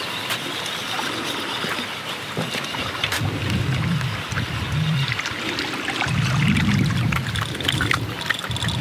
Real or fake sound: real